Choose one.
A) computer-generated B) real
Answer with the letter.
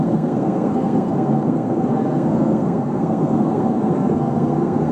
A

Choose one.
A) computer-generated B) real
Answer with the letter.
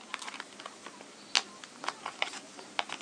B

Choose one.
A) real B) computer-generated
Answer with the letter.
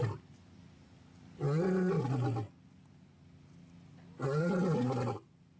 A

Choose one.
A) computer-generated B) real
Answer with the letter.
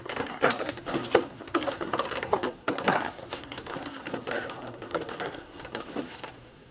A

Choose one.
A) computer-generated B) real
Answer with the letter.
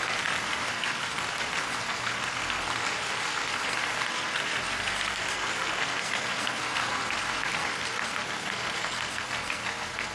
A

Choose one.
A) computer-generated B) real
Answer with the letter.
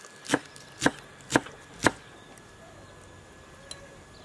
B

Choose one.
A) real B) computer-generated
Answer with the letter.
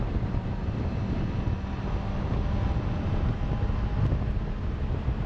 A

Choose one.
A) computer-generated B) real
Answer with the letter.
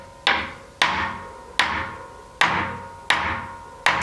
B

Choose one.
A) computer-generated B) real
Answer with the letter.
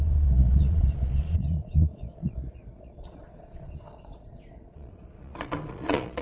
A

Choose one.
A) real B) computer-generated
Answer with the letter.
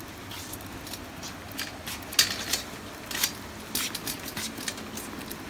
A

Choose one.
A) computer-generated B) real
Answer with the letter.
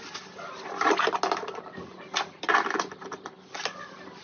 B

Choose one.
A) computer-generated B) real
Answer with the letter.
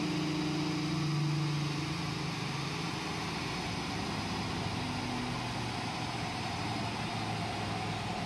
B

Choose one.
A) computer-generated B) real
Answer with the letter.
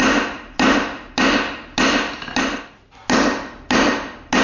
B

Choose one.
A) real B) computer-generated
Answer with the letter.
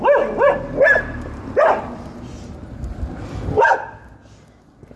A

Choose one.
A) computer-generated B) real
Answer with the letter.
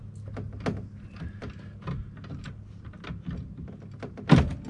B